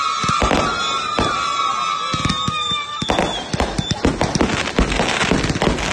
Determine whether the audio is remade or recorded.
recorded